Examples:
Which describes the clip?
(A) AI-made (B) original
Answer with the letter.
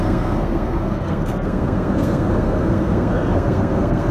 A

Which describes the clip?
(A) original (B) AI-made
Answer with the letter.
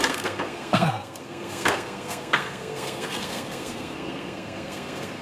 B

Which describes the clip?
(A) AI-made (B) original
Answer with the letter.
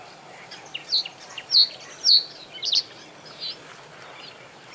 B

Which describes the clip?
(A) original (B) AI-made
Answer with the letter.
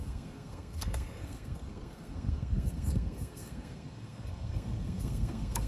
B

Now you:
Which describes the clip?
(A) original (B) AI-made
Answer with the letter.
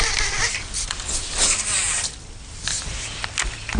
A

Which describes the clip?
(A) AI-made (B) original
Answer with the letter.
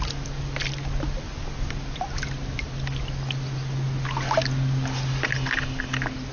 B